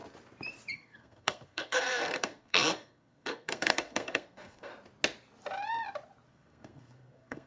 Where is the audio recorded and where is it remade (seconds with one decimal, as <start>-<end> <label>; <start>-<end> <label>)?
0.0-0.7 recorded; 0.7-4.7 remade; 4.7-6.3 recorded; 6.3-7.5 remade